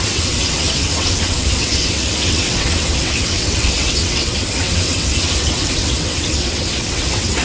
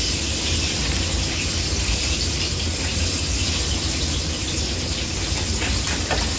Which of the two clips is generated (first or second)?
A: first